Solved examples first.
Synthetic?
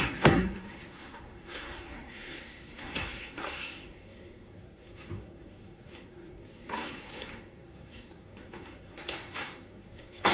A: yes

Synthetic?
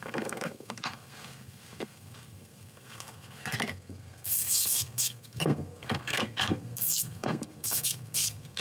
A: yes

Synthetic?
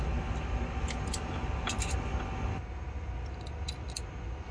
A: no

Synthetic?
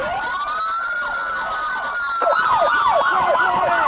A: no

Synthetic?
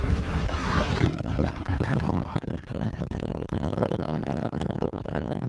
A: yes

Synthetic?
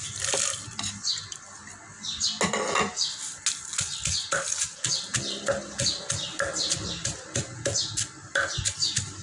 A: no